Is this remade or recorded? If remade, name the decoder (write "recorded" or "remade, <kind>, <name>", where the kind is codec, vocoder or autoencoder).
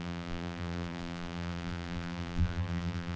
remade, vocoder, BigVGAN v2